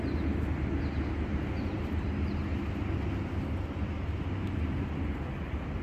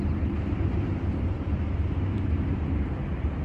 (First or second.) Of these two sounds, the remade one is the second